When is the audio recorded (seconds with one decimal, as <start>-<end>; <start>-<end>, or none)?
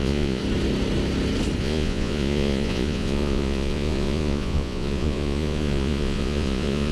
0.4-1.6